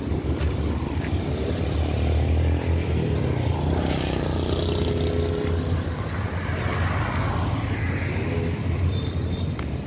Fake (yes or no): no